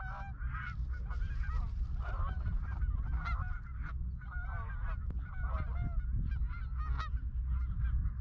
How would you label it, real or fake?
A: real